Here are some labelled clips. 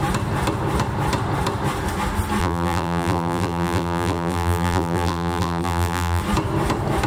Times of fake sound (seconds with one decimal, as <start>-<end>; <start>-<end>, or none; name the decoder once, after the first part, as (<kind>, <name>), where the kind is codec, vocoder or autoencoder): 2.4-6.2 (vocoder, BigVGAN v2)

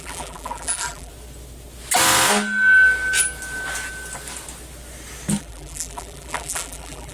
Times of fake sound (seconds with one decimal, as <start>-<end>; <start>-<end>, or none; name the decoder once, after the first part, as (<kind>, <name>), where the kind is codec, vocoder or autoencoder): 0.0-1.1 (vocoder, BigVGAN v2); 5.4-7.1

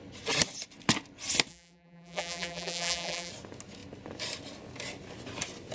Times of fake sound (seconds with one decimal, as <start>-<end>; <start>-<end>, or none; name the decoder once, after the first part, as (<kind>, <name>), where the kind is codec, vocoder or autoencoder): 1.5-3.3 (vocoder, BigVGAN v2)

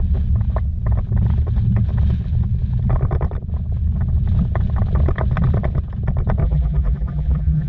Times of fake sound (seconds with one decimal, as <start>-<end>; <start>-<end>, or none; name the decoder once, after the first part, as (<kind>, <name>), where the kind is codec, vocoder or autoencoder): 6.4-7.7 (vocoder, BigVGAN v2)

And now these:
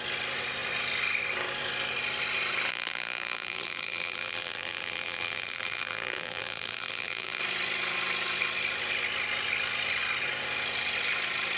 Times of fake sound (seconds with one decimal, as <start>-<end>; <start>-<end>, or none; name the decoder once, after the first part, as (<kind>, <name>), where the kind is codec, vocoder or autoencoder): 2.7-7.4 (vocoder, BigVGAN v2)